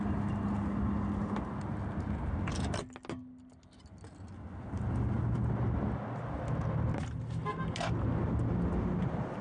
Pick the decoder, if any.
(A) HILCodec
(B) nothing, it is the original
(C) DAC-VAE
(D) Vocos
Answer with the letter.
B